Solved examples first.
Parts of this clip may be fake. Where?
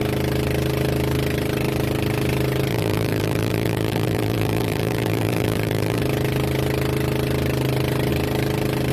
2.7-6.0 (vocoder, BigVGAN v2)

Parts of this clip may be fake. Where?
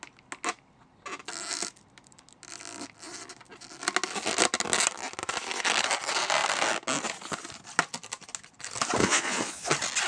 9.0-9.7 (vocoder, Vocos)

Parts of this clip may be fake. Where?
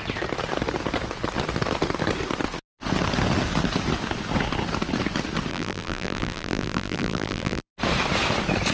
5.5-7.7 (vocoder, BigVGAN v2)